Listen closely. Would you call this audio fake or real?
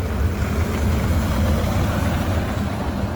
real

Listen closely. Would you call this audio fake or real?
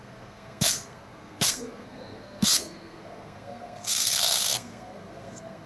fake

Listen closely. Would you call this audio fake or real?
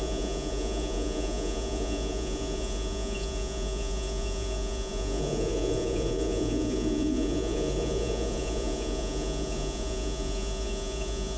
fake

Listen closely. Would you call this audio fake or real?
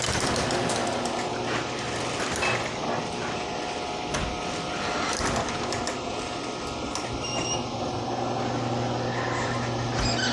real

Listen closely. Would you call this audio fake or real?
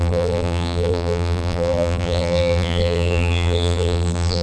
fake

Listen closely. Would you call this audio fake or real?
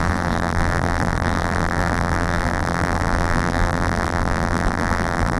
fake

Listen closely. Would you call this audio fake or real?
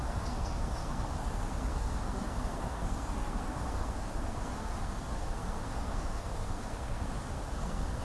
fake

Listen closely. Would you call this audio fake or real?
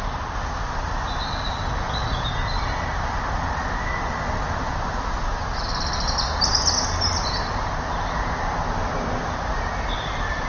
real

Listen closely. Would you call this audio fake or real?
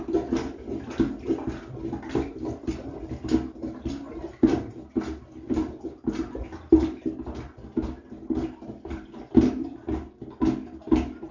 real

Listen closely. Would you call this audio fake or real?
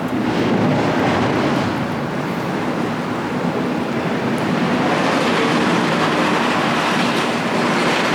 real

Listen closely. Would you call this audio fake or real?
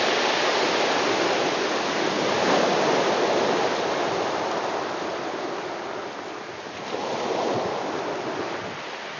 real